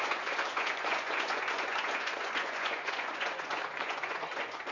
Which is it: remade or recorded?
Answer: remade